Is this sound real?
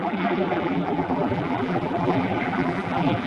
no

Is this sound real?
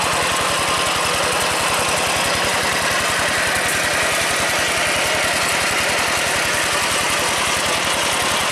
yes